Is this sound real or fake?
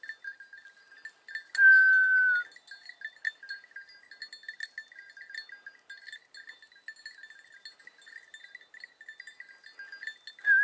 real